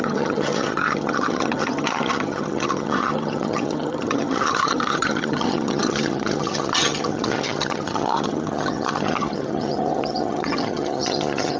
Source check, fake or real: fake